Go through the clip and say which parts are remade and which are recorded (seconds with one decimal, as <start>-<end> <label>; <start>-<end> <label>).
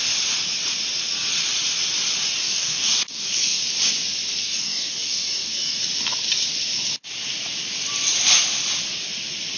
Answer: 0.0-2.4 recorded; 2.4-3.6 remade; 3.6-4.4 recorded; 4.4-5.8 remade; 5.8-9.6 recorded